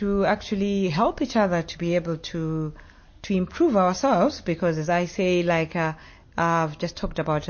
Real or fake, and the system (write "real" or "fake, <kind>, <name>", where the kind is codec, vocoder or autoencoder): real